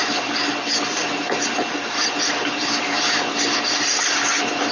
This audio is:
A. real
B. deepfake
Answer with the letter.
A